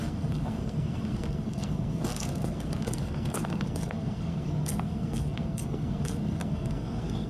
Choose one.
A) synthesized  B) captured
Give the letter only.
A